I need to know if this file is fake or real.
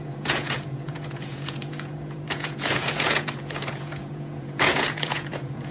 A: fake